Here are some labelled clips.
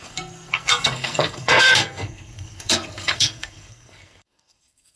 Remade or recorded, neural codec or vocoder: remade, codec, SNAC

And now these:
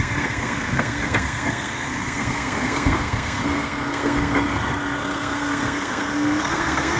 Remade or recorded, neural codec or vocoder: remade, codec, SNAC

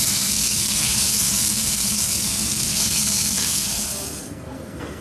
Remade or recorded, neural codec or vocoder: remade, codec, SNAC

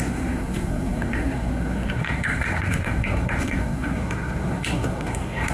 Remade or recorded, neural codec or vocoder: remade, codec, SNAC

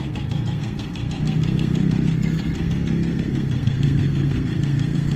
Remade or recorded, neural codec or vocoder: remade, codec, SNAC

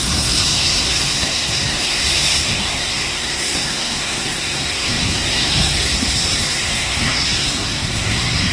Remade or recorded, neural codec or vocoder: remade, codec, SNAC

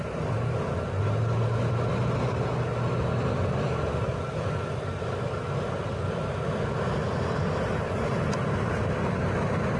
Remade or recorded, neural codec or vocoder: recorded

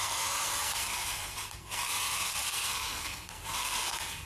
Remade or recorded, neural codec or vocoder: remade, codec, SNAC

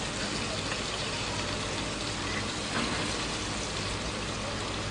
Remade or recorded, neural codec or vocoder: recorded